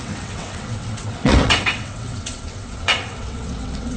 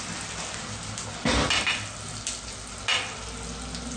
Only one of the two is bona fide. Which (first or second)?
second